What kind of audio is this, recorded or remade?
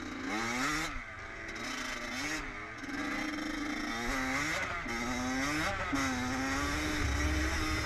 recorded